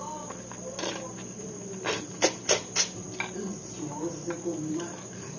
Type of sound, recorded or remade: recorded